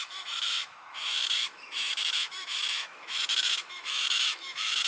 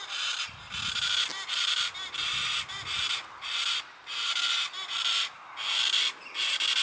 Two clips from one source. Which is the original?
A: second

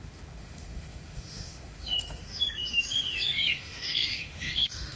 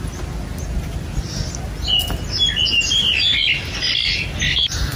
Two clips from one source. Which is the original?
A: second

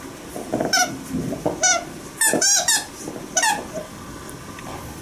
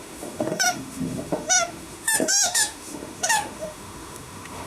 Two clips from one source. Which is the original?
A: first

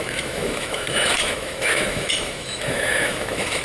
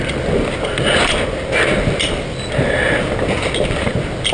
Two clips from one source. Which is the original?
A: second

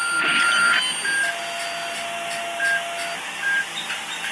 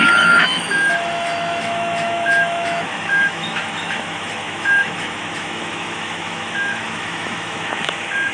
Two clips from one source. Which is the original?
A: first